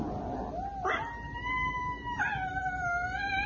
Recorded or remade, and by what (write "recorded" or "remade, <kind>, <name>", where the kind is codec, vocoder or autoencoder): recorded